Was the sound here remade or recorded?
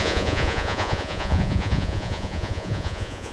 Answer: remade